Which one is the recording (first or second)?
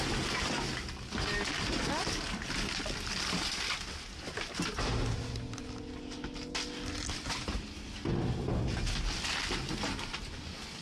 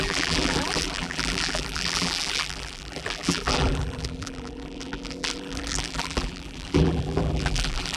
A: first